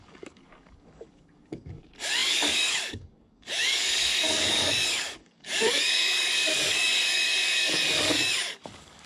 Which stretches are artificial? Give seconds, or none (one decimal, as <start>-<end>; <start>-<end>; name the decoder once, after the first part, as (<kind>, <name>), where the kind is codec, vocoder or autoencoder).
0.0-9.1 (codec, DAC)